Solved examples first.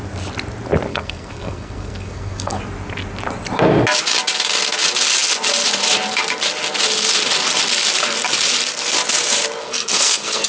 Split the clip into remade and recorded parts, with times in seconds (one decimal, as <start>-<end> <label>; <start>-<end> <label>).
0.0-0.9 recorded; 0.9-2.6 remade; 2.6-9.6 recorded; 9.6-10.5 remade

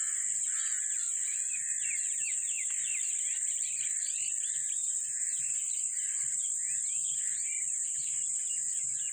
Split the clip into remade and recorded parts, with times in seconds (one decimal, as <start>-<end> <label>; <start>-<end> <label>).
0.0-9.1 recorded

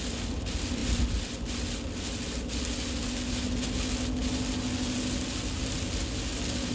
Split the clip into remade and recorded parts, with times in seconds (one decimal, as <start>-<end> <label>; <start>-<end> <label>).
0.0-6.7 recorded

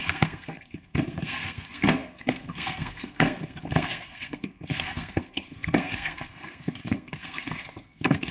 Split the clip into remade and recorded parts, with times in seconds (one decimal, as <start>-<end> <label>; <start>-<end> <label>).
0.0-8.3 remade

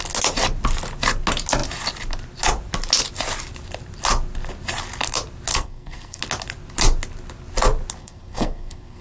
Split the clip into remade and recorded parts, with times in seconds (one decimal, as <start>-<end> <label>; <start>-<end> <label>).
0.0-5.5 recorded; 5.5-6.2 remade; 6.2-8.0 recorded; 8.0-9.0 remade

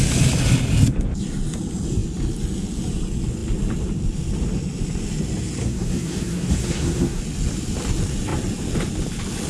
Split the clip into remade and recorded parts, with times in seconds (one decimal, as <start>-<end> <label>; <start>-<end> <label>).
0.0-5.6 recorded; 5.6-7.2 remade; 7.2-9.5 recorded